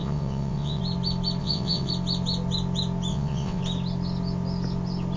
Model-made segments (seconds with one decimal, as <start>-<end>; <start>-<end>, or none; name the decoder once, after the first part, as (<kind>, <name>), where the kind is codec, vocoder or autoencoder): 0.0-0.8 (vocoder, WaveNeXt); 1.4-1.9; 3.1-3.6